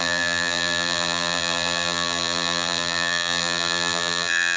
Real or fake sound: fake